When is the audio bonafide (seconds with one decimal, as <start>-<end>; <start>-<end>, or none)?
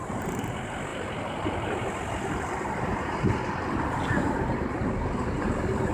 0.0-5.9